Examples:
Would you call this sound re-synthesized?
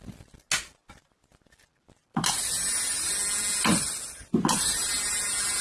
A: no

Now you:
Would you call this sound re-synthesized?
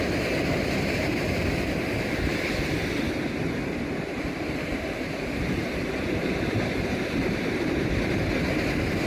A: yes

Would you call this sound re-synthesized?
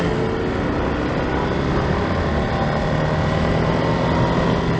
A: no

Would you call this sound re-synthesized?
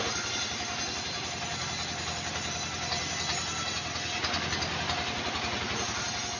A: no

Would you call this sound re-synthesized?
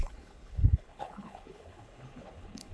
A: yes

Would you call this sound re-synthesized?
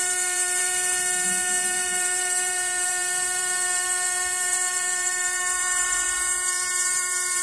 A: yes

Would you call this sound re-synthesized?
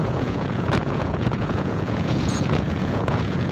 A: yes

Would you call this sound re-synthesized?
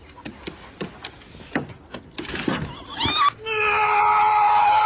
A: no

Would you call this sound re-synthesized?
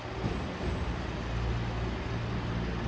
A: no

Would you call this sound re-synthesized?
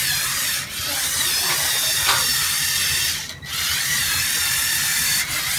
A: no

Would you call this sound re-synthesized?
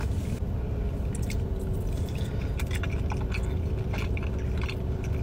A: no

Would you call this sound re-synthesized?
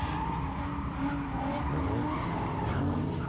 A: no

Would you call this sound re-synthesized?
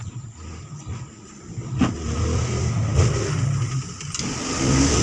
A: no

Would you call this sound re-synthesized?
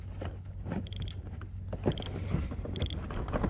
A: no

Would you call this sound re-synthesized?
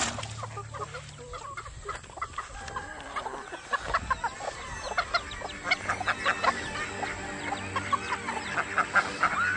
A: no